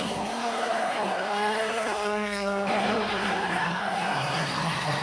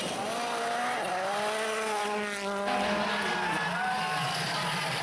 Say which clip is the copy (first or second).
first